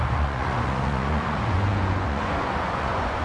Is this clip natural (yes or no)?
no